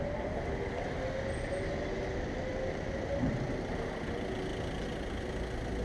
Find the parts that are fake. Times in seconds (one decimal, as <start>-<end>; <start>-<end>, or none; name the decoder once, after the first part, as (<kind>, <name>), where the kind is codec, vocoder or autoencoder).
2.5-3.3 (vocoder, BigVGAN v2)